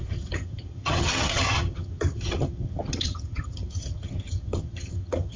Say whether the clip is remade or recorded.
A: remade